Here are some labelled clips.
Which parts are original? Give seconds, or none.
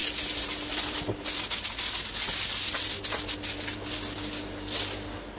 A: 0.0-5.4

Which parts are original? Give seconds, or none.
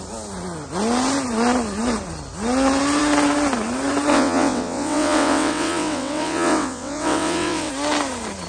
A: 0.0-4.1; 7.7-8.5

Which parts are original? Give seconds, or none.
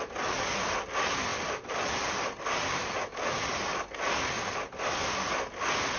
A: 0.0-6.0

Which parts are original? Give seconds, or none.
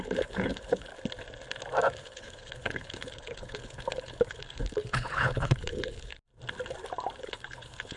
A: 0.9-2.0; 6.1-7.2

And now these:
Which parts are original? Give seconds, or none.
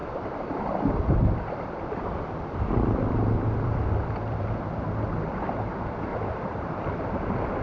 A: 4.6-6.1